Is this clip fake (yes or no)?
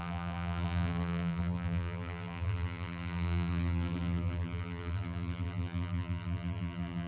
yes